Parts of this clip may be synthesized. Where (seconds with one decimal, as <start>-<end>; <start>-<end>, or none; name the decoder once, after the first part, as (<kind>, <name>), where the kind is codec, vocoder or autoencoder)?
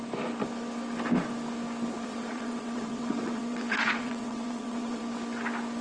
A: 1.9-5.0 (vocoder, WaveNeXt)